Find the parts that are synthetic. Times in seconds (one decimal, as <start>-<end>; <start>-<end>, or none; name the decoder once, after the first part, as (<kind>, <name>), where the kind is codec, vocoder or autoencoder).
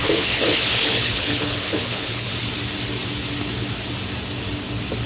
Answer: 0.0-2.3 (codec, HILCodec)